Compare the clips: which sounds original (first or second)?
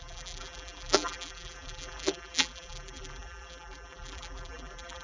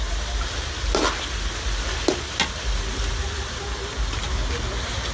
second